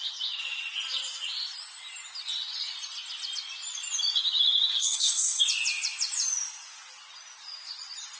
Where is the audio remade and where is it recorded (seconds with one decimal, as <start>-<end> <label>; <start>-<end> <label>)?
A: 0.0-4.7 recorded; 4.7-5.4 remade; 5.4-8.2 recorded